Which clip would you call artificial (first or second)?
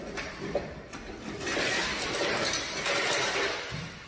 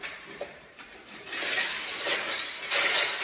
second